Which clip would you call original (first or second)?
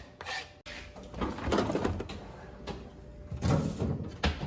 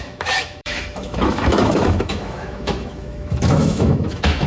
first